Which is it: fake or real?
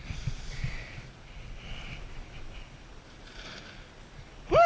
real